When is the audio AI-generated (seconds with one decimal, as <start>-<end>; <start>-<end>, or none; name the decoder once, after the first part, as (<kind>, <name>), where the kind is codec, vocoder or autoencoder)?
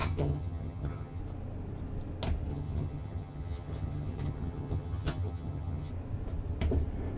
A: 0.0-1.2 (vocoder, HiFi-GAN); 2.5-5.9